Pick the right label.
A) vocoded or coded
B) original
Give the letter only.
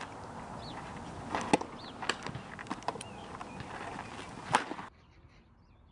B